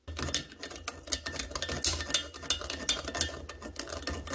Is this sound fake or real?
real